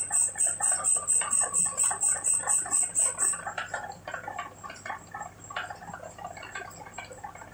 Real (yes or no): yes